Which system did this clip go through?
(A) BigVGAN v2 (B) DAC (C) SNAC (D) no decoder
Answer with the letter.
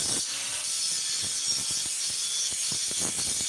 D